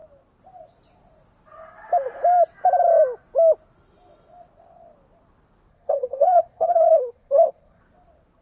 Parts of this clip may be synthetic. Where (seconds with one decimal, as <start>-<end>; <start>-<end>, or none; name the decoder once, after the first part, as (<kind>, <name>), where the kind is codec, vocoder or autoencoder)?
5.7-7.8 (codec, SNAC)